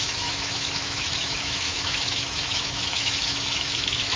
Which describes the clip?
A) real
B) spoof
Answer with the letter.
B